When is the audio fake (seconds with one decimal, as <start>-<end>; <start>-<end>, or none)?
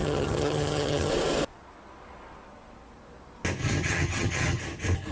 0.0-1.1; 3.6-4.6